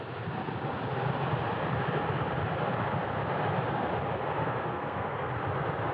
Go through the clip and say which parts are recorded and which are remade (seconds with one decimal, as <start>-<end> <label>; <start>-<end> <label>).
0.0-4.4 recorded; 4.4-5.3 remade; 5.3-5.9 recorded